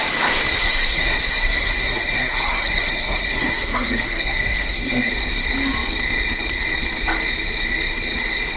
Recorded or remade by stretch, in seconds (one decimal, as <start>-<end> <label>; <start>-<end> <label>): 0.0-0.6 recorded; 0.6-5.1 remade; 5.1-8.6 recorded